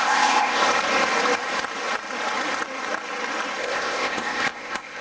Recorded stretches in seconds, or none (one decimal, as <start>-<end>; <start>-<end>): 0.6-3.6